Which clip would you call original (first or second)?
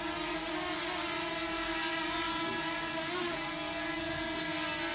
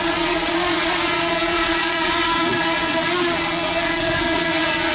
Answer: first